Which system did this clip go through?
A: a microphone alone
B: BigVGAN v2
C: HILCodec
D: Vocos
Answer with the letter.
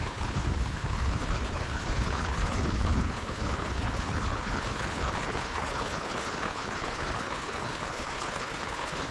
C